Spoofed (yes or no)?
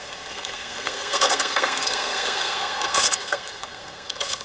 yes